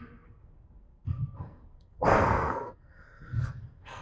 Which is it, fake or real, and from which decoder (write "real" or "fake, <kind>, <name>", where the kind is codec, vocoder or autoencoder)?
fake, codec, SNAC